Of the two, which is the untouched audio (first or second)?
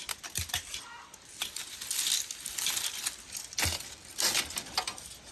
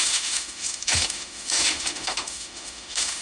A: first